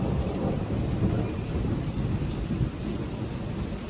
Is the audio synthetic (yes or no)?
no